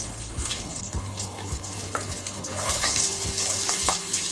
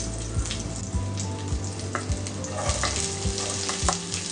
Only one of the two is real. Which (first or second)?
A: second